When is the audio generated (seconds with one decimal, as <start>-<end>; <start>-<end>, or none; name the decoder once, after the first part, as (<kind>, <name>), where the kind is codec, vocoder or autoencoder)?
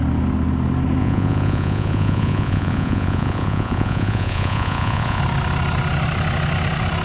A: 1.0-5.2 (vocoder, Vocos)